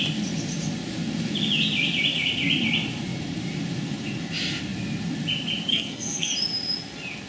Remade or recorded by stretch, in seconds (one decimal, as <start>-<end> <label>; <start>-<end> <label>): 0.0-5.7 recorded; 5.7-6.3 remade; 6.3-7.3 recorded